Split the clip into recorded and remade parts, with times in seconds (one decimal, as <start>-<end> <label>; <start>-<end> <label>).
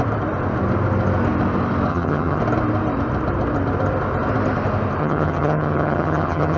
0.0-1.9 recorded; 1.9-2.4 remade; 2.4-5.0 recorded; 5.0-6.6 remade